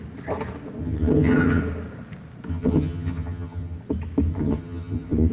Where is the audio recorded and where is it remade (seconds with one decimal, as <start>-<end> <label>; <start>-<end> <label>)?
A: 0.0-0.8 recorded; 0.8-1.6 remade; 1.6-2.5 recorded; 2.5-3.8 remade; 3.8-4.3 recorded; 4.3-5.3 remade